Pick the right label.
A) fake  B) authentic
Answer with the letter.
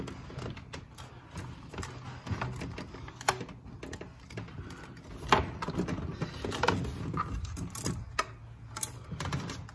B